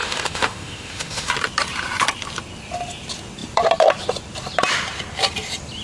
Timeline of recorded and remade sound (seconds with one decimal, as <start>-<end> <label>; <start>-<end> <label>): 0.0-1.3 remade; 1.3-5.8 recorded